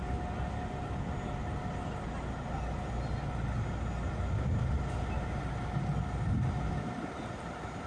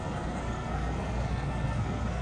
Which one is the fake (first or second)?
second